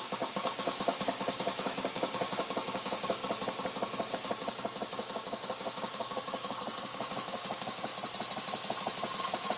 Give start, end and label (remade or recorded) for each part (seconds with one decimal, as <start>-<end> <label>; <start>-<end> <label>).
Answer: 0.0-3.2 remade; 3.2-4.1 recorded; 4.1-7.9 remade; 7.9-9.2 recorded; 9.2-9.6 remade